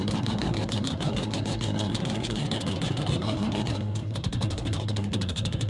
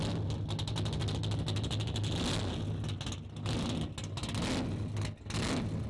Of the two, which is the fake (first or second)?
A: first